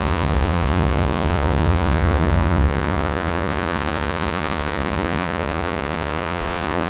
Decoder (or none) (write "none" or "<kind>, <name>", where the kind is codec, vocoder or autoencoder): vocoder, Vocos